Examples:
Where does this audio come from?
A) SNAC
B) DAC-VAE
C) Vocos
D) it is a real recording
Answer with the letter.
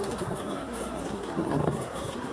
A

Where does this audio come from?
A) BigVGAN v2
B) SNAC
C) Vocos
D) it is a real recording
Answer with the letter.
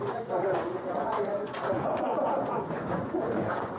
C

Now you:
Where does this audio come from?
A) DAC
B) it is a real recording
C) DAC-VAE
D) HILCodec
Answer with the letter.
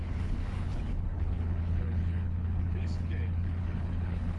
D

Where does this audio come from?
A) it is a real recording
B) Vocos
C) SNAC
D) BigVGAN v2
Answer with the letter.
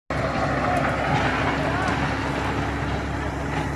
A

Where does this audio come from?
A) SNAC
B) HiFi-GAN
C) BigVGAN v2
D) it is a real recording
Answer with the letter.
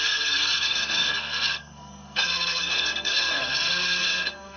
A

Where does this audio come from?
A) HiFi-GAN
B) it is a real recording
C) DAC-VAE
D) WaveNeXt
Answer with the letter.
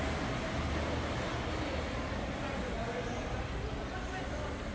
B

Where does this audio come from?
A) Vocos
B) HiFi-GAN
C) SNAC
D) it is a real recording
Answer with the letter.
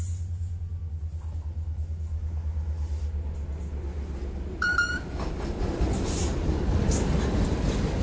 D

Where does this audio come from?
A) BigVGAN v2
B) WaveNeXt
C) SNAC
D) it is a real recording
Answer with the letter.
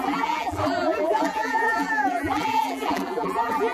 A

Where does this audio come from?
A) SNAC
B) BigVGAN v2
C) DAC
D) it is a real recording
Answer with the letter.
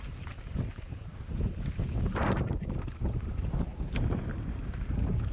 B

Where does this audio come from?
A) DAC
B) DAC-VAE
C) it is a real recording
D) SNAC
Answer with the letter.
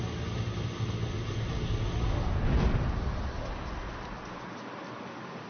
C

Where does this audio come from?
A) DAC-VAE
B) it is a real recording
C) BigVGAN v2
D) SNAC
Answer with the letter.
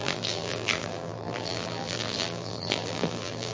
C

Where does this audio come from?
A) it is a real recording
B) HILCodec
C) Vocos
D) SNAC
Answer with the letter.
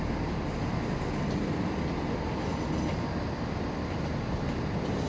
A